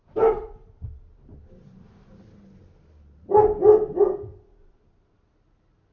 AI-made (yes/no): no